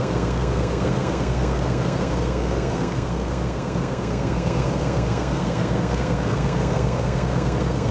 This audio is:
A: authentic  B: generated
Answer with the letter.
B